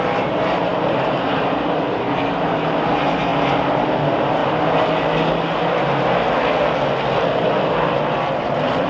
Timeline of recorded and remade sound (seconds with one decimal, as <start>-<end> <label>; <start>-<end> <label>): 0.0-3.3 remade; 3.3-4.0 recorded; 4.0-4.4 remade; 4.4-8.4 recorded; 8.4-8.9 remade